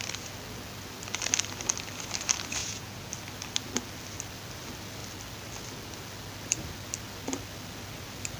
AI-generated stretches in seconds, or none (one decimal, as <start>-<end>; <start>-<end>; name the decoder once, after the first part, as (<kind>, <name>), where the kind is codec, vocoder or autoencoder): 2.6-3.1 (vocoder, Vocos)